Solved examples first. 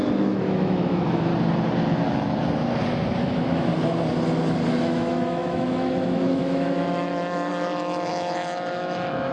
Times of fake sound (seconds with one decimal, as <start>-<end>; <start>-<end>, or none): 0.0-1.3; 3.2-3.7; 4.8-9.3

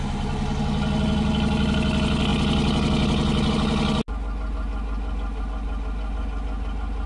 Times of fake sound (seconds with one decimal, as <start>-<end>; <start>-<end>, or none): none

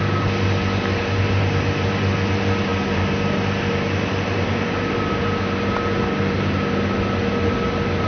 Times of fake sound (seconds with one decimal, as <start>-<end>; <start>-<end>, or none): none

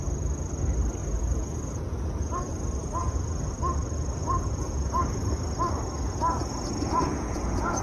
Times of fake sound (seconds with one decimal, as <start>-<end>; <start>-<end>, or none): 1.0-2.5; 3.0-3.5; 4.2-5.4; 6.4-7.8